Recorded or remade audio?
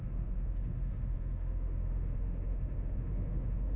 remade